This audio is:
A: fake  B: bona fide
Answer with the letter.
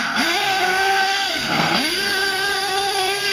A